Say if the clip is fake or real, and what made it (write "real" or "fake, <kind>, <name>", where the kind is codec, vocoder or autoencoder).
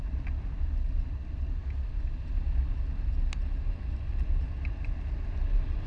real